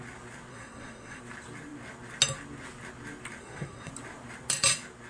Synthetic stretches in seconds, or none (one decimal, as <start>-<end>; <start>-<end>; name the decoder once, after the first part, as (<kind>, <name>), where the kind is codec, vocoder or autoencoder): 0.5-1.2 (codec, SNAC); 3.4-3.9